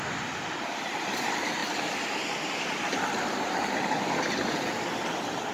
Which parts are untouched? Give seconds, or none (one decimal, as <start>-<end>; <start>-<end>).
0.0-5.5